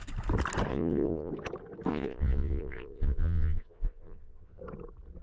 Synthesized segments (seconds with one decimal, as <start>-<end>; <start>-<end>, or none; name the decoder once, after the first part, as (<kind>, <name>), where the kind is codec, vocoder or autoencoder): 0.7-1.3 (vocoder, Vocos); 1.9-4.6